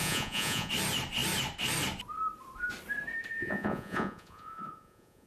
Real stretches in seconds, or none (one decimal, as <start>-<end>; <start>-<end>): 0.7-3.4